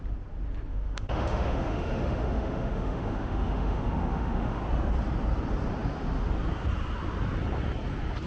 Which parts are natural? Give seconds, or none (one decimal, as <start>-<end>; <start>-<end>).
0.0-0.7; 4.6-8.3